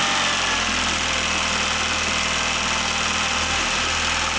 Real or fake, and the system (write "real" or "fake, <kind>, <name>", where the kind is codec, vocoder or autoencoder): real